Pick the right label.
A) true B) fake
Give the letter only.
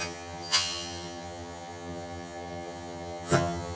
B